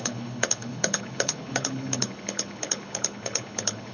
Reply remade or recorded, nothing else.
remade